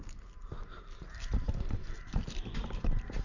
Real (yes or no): no